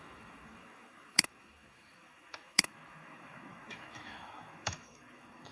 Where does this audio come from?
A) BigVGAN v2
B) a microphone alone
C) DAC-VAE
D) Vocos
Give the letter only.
C